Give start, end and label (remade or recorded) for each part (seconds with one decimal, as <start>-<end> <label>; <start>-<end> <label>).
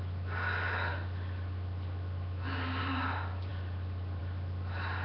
0.0-5.0 recorded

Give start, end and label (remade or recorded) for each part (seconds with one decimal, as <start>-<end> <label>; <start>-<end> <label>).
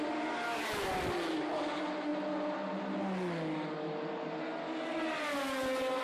0.0-6.0 recorded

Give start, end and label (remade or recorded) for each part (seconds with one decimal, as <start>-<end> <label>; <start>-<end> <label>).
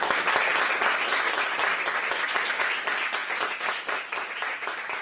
0.0-5.0 recorded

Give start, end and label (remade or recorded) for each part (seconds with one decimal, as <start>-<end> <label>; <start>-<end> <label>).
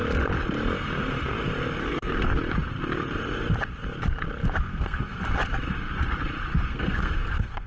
0.0-1.8 recorded; 1.8-2.4 remade; 2.4-4.7 recorded; 4.7-5.2 remade; 5.2-6.7 recorded; 6.7-7.7 remade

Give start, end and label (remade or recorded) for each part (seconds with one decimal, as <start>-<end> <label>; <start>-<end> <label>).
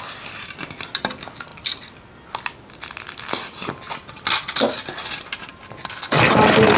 0.0-6.8 recorded